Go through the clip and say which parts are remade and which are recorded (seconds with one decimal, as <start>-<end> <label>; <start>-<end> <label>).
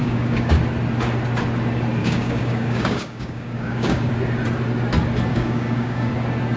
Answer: 0.0-0.6 remade; 0.6-2.0 recorded; 2.0-4.1 remade; 4.1-5.3 recorded; 5.3-6.1 remade; 6.1-6.6 recorded